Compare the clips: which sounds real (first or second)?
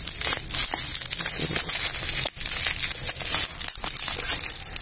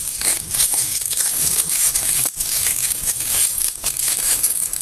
first